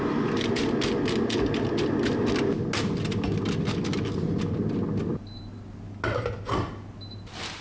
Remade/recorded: recorded